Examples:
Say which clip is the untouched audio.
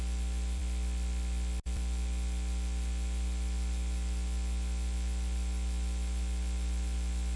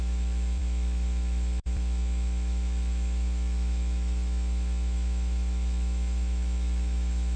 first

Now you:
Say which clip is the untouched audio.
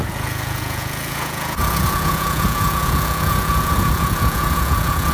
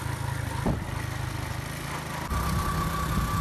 second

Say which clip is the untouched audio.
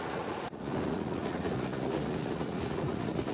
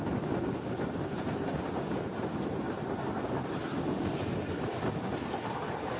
second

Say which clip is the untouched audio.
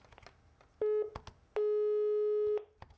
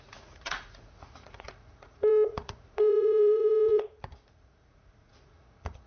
first